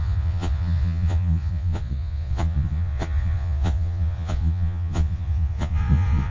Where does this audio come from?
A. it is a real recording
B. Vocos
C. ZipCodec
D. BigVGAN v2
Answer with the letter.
B